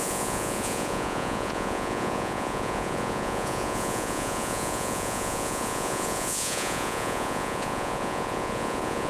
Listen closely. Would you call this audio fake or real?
fake